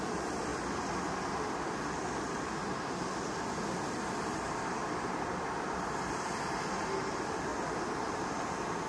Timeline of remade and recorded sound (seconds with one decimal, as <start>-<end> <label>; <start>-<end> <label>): 0.0-0.5 remade; 0.5-3.9 recorded; 3.9-4.8 remade; 4.8-7.1 recorded; 7.1-7.5 remade; 7.5-8.0 recorded; 8.0-8.9 remade